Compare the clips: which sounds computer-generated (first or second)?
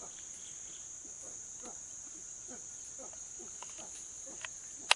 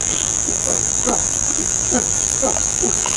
second